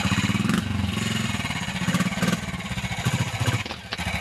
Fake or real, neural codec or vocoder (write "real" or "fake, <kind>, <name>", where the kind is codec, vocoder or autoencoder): real